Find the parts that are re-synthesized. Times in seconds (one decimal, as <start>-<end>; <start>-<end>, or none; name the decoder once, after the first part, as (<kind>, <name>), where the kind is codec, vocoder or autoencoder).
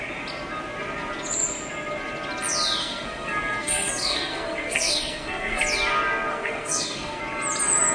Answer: 2.8-5.6 (codec, SNAC); 6.3-7.2